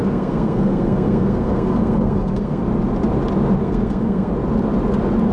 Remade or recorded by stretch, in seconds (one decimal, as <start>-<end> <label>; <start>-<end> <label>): 0.0-2.6 remade; 2.6-3.6 recorded; 3.6-4.3 remade; 4.3-5.3 recorded